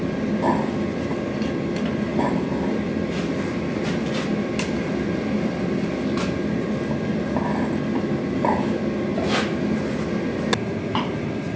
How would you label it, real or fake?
real